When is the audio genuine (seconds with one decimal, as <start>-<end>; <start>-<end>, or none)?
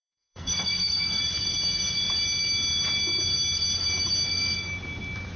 1.2-5.4